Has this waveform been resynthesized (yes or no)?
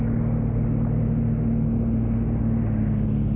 no